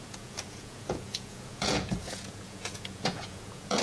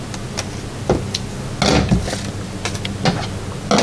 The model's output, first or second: first